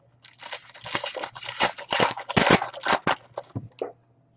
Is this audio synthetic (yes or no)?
no